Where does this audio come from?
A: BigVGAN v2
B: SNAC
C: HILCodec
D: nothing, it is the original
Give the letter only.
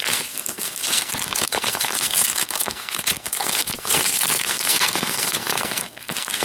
B